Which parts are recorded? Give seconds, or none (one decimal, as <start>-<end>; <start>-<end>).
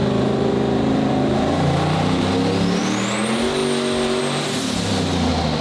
2.3-5.6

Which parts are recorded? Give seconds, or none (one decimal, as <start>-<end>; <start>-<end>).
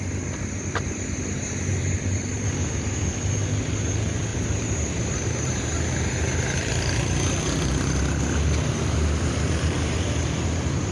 0.0-1.7; 2.5-4.3; 5.5-10.9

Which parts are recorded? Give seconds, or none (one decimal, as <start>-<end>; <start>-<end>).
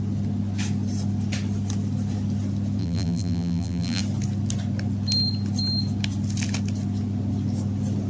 0.0-2.8; 4.0-8.1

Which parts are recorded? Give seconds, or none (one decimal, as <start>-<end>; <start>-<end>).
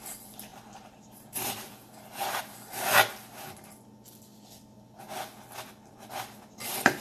0.0-0.5; 2.4-7.0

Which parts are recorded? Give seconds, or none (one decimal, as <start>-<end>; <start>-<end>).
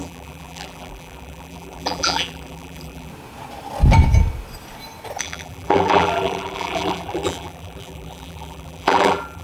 3.1-5.2